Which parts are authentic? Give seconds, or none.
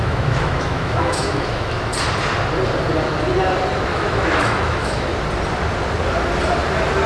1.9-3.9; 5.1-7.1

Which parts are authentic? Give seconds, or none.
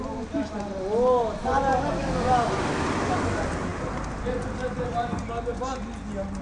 0.0-6.4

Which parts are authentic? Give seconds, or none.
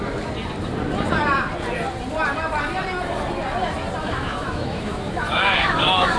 0.0-4.0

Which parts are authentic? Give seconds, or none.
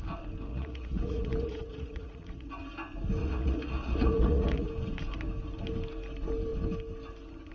0.0-0.5; 2.5-3.2; 4.7-7.5